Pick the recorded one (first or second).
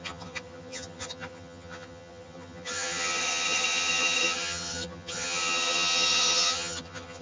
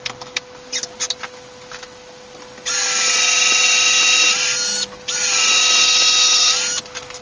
second